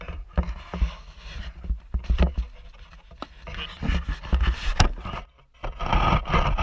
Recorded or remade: recorded